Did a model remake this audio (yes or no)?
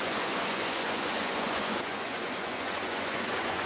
yes